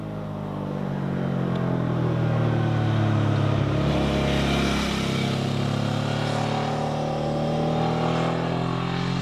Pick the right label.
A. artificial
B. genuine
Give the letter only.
B